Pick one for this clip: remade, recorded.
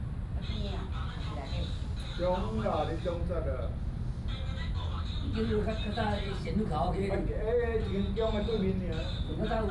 recorded